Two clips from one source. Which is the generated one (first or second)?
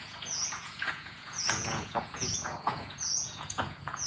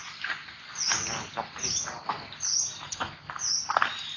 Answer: first